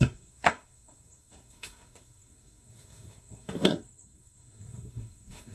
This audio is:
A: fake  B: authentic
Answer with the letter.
A